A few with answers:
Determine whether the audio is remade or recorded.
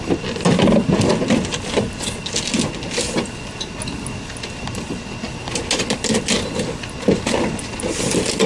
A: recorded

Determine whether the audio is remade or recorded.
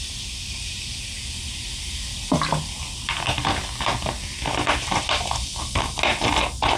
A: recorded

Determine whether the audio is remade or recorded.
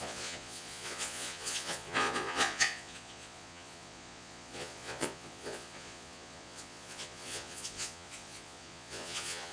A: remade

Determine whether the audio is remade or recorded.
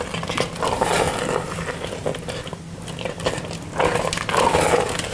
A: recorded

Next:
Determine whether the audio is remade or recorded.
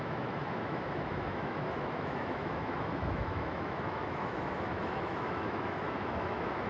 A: remade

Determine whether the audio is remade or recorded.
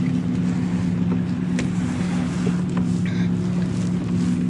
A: recorded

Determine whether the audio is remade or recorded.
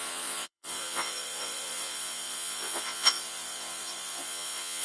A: remade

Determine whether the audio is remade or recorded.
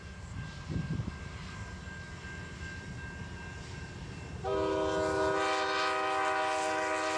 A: recorded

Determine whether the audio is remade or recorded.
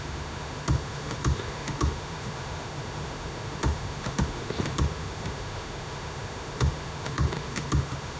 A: remade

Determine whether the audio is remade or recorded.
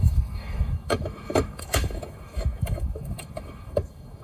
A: remade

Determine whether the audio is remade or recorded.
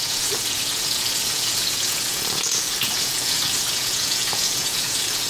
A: remade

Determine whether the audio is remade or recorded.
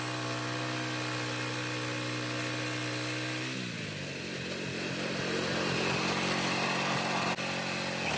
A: recorded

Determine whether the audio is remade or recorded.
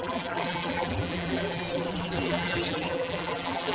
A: remade